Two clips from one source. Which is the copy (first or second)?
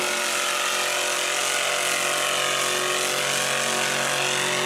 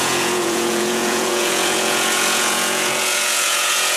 second